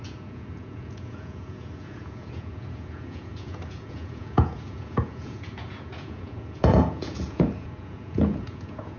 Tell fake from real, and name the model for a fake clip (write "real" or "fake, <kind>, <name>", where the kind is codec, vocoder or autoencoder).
fake, vocoder, Vocos